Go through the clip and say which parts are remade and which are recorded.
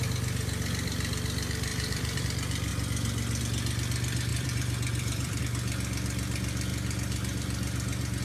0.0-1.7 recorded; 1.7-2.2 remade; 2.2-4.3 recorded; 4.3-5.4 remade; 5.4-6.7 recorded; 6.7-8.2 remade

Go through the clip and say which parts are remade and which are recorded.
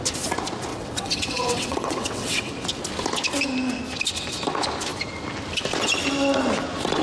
0.0-0.7 recorded; 0.7-2.5 remade; 2.5-7.0 recorded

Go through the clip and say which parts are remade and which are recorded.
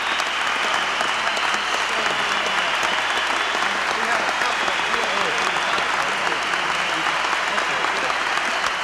0.0-8.8 recorded